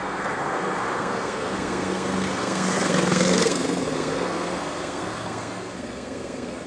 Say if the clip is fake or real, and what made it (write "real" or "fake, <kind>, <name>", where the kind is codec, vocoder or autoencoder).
fake, codec, SNAC